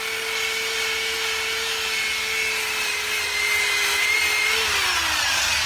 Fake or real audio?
real